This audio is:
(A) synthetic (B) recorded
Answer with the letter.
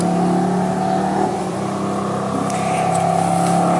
B